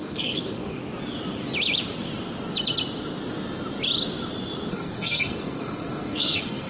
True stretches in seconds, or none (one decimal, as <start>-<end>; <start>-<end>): 0.8-4.7